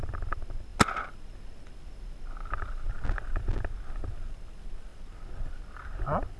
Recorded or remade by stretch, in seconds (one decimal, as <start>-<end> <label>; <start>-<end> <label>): 0.0-6.4 recorded